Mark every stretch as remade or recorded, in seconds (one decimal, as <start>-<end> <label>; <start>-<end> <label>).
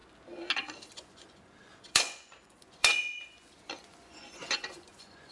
0.0-0.9 recorded; 0.9-5.3 remade